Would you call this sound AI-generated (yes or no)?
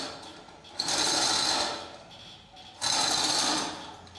no